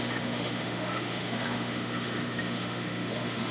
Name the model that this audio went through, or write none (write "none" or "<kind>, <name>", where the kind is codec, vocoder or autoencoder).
autoencoder, DAC-VAE